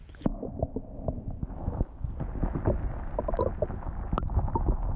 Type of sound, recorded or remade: recorded